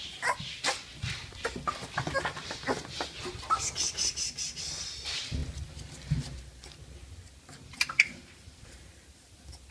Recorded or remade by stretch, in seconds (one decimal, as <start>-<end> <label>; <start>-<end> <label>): 0.0-9.7 recorded